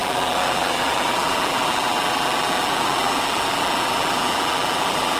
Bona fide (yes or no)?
no